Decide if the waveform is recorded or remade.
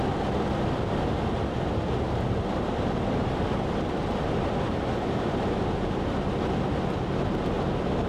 recorded